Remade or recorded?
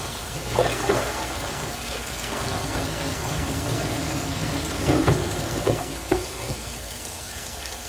remade